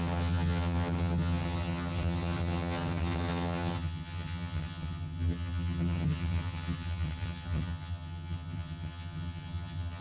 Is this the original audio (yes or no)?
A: no